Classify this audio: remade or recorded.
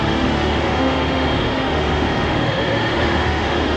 remade